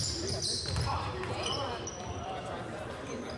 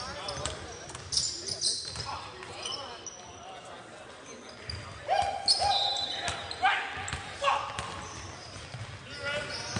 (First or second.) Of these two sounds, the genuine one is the second